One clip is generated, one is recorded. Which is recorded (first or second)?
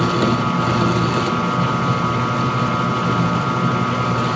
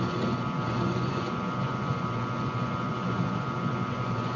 first